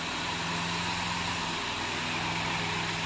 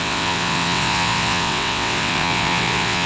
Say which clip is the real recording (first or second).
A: first